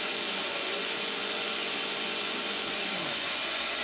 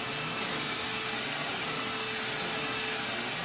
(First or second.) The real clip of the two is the second